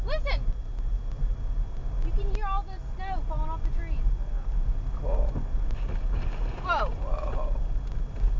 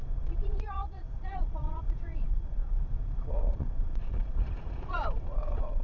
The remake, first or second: second